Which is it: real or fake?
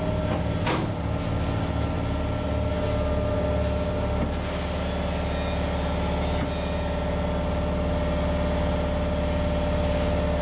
real